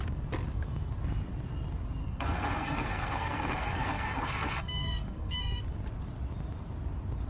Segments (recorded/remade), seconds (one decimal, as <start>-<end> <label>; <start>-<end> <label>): 0.0-2.0 recorded; 2.0-5.6 remade; 5.6-7.3 recorded